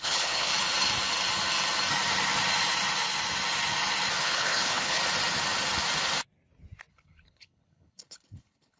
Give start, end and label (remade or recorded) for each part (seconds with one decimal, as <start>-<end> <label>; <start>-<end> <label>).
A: 0.0-0.5 remade; 0.5-4.2 recorded; 4.2-5.0 remade; 5.0-6.9 recorded; 6.9-8.8 remade